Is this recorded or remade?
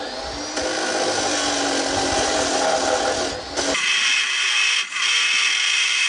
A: recorded